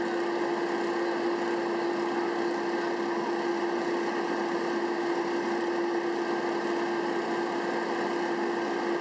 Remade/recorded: recorded